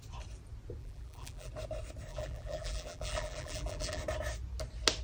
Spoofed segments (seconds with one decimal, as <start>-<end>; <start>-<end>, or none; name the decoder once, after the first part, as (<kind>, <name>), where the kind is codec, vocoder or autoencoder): 0.8-1.5 (vocoder, BigVGAN v2); 2.1-4.0